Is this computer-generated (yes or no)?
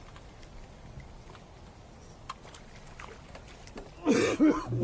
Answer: no